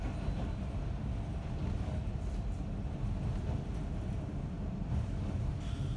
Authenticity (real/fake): real